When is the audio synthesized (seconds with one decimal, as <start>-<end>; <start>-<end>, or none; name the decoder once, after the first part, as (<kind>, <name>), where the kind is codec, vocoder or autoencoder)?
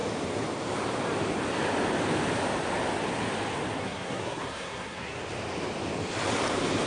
3.8-5.2 (codec, SNAC)